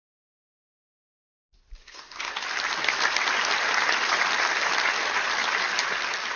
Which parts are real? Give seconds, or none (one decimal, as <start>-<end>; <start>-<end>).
0.0-1.8; 2.3-6.4